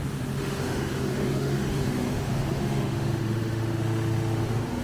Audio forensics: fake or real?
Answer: fake